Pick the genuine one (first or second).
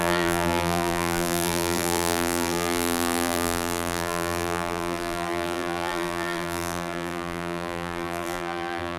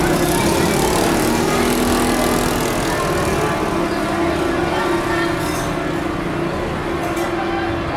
second